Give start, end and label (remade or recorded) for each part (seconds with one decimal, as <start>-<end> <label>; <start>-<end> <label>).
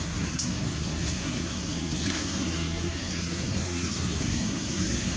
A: 0.0-5.2 remade